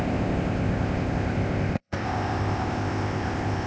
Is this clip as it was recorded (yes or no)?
no